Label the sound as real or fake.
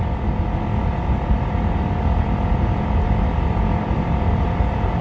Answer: real